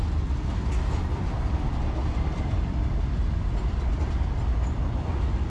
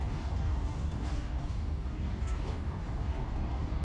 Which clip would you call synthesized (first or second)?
second